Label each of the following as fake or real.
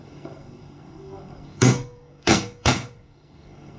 fake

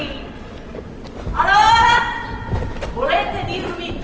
real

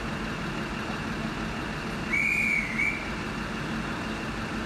real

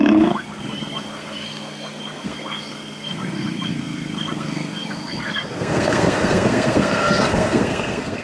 fake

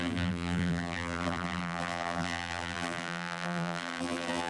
fake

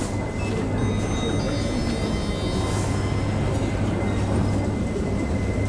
real